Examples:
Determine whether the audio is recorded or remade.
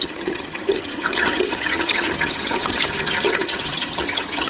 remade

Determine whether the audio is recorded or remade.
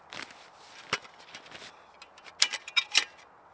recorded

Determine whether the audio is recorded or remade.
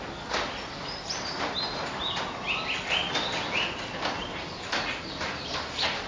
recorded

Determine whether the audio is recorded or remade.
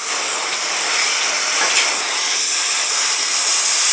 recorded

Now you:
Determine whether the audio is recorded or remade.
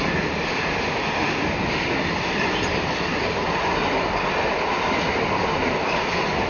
recorded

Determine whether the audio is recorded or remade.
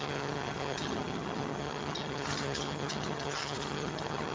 remade